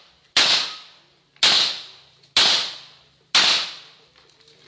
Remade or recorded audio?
recorded